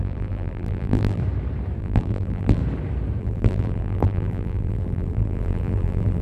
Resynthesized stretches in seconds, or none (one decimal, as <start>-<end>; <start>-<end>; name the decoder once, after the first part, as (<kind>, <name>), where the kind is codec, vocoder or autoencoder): 0.0-1.2 (vocoder, BigVGAN v2); 1.8-2.6; 3.2-6.2